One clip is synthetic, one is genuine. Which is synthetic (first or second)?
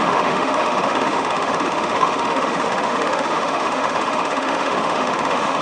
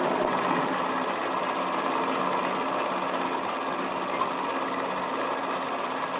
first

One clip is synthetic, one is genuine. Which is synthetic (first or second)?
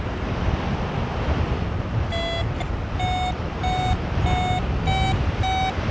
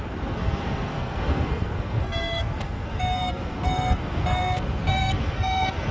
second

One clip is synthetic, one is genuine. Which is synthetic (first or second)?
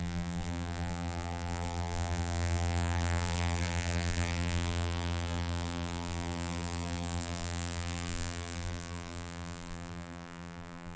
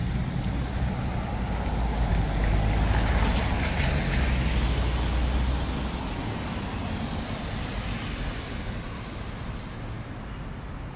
first